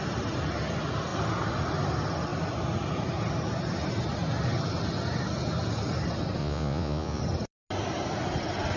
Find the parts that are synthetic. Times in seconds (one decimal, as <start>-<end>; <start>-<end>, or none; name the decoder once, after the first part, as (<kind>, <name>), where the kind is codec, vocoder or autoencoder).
6.4-7.2 (vocoder, Vocos)